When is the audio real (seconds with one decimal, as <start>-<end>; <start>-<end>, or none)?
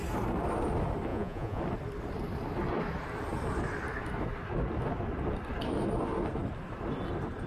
0.0-1.1; 1.6-7.5